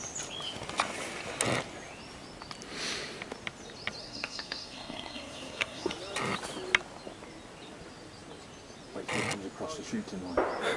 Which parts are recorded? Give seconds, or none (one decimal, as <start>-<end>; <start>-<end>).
0.0-4.0; 5.9-10.8